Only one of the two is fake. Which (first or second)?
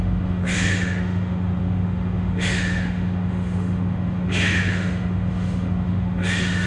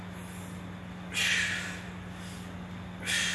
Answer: first